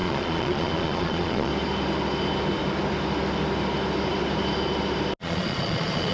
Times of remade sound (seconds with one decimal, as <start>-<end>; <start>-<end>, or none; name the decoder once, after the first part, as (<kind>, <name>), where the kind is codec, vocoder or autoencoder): 0.0-1.5 (vocoder, Vocos); 5.2-6.1